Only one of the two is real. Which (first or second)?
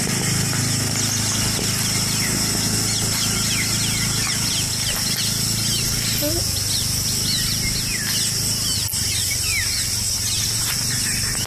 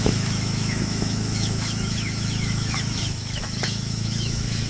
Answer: first